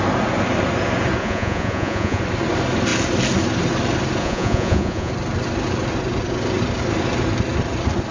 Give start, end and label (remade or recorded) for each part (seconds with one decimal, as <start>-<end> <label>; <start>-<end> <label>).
0.0-1.2 recorded; 1.2-2.2 remade; 2.2-4.2 recorded; 4.2-5.1 remade; 5.1-8.1 recorded

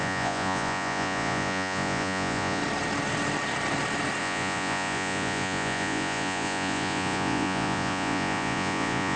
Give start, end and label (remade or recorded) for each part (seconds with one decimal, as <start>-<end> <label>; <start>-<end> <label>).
0.0-2.6 remade; 2.6-4.2 recorded; 4.2-9.2 remade

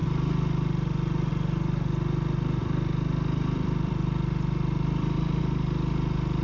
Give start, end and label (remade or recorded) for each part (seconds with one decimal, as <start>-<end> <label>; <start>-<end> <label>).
0.0-2.6 recorded; 2.6-5.4 remade; 5.4-6.4 recorded

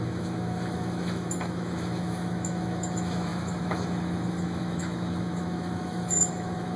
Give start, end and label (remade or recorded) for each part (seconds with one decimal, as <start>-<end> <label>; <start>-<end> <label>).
0.0-6.8 remade